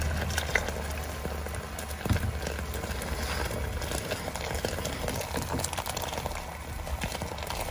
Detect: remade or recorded recorded